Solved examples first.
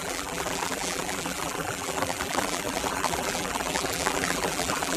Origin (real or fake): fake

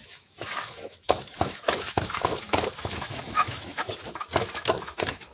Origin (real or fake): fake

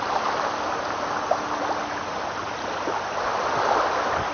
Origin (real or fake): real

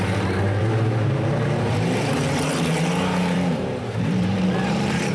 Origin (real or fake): fake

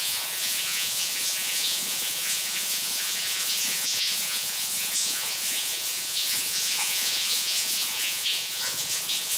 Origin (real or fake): fake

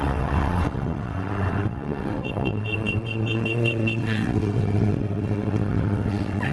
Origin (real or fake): fake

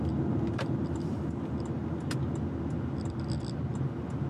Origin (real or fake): real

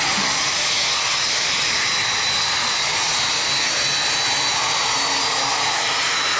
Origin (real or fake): real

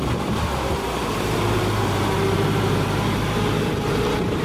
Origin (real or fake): fake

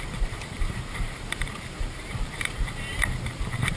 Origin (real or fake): fake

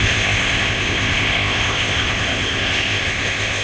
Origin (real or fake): fake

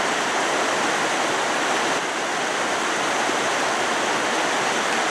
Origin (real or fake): real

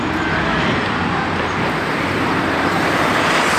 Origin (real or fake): fake